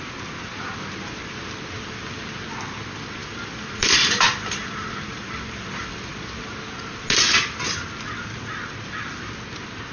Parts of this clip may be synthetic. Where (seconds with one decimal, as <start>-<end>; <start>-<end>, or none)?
3.2-6.4